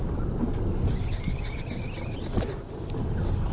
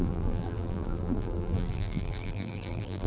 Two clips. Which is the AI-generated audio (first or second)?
second